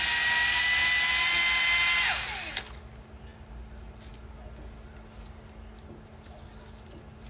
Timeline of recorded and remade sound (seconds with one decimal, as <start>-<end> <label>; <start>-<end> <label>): 0.0-7.3 recorded